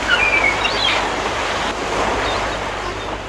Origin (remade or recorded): recorded